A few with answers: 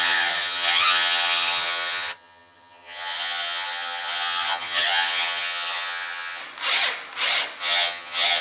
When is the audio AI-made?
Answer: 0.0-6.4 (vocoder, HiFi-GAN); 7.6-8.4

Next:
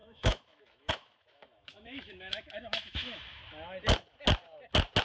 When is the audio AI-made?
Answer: 0.0-3.4 (autoencoder, DAC-VAE)

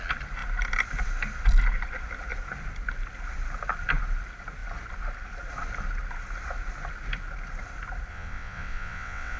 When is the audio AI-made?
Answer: 8.1-9.4 (vocoder, WaveNeXt)

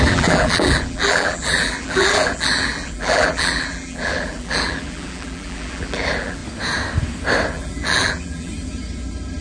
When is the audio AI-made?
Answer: 0.0-6.4 (vocoder, BigVGAN v2); 7.5-8.5

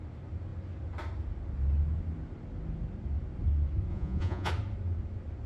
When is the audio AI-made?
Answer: 3.9-4.5 (vocoder, Vocos)

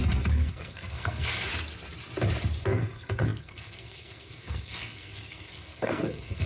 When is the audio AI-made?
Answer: 0.0-1.5 (codec, SNAC); 2.6-6.5

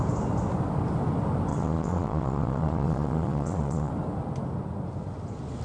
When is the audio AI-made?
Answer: 1.5-3.9 (vocoder, Vocos)

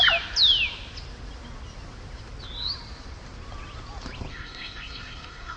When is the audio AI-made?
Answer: 4.3-5.6 (codec, SNAC)